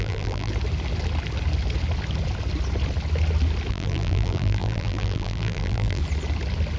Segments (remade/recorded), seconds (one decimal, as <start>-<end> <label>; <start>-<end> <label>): 0.0-0.5 remade; 0.5-3.7 recorded; 3.7-6.0 remade; 6.0-6.8 recorded